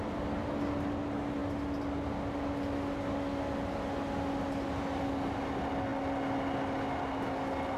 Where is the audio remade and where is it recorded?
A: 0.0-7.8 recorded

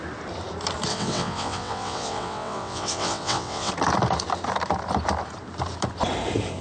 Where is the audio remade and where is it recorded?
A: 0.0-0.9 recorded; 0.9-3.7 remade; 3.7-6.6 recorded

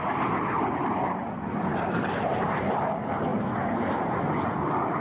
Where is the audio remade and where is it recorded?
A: 0.0-1.7 recorded; 1.7-2.7 remade; 2.7-5.0 recorded